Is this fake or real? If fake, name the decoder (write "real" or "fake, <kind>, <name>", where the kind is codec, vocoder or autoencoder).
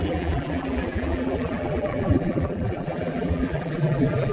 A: fake, vocoder, BigVGAN v2